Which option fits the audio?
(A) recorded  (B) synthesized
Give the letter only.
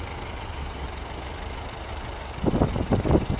A